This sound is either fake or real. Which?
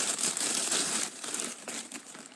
fake